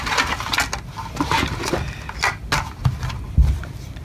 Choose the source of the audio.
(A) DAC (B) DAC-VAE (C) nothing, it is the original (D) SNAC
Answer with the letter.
C